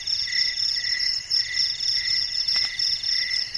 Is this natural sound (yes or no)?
yes